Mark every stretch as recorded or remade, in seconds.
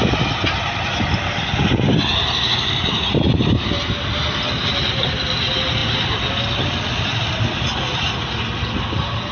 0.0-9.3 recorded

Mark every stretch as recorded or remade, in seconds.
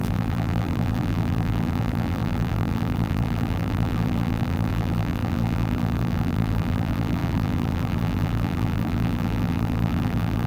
0.0-10.5 remade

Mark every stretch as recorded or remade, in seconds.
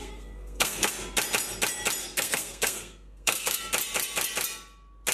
0.0-0.9 remade; 0.9-2.0 recorded; 2.0-3.6 remade; 3.6-5.1 recorded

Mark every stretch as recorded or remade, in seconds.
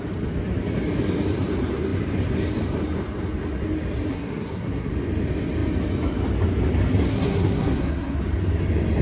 0.0-4.1 recorded; 4.1-4.9 remade; 4.9-7.1 recorded; 7.1-8.2 remade; 8.2-9.0 recorded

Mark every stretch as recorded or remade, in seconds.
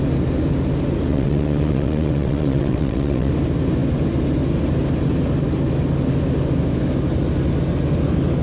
0.0-1.1 recorded; 1.1-3.3 remade; 3.3-8.4 recorded